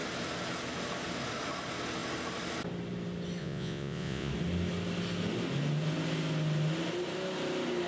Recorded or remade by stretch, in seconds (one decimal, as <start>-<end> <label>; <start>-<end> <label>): 0.0-3.4 recorded; 3.4-4.3 remade; 4.3-7.9 recorded